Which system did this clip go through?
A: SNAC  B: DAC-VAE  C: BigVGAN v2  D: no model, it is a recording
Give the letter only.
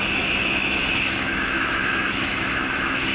B